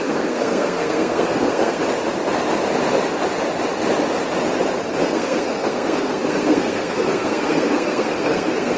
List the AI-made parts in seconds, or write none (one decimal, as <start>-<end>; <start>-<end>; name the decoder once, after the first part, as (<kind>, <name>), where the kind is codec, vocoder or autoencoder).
0.0-1.8 (codec, SNAC); 5.0-8.8